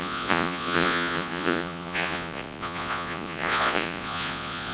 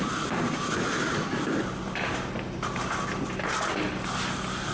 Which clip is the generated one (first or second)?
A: first